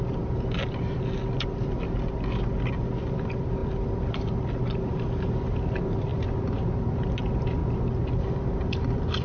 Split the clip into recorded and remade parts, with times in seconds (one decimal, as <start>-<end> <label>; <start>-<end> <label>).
0.0-9.2 recorded